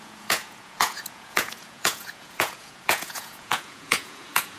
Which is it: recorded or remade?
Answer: remade